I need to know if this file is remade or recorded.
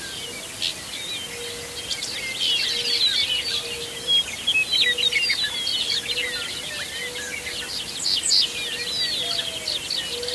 recorded